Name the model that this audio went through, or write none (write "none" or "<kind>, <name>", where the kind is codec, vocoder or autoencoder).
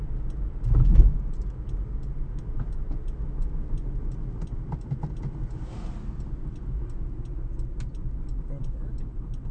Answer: none